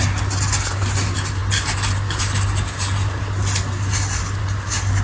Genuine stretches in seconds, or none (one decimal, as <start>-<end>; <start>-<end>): 0.0-5.0